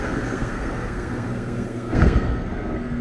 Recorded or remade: remade